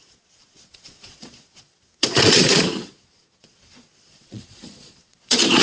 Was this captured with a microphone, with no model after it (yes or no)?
no